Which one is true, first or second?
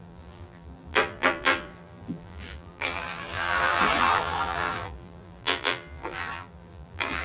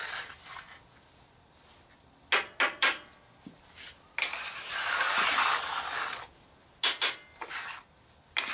second